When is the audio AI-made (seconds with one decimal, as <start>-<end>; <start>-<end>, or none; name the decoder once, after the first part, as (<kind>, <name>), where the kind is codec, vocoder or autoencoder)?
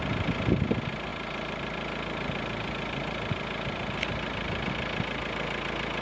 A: none